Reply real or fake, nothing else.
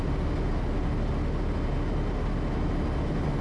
real